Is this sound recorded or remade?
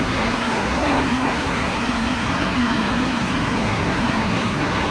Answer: remade